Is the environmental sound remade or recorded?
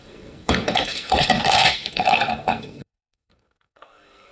remade